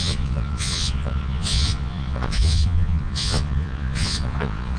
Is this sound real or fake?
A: fake